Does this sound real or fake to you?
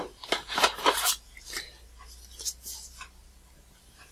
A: real